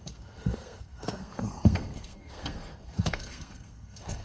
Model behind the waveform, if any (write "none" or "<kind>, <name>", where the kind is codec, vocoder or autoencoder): codec, SNAC